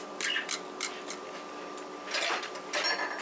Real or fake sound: real